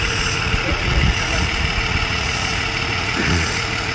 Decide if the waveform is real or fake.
fake